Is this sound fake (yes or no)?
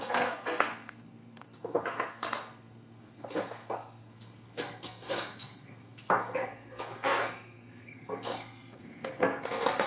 yes